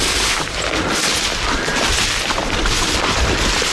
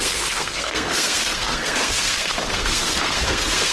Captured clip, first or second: first